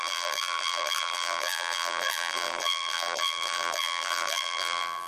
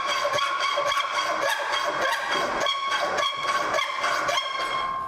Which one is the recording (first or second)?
second